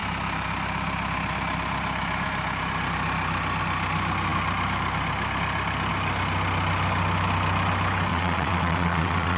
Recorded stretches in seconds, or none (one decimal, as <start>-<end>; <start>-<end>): 0.0-8.1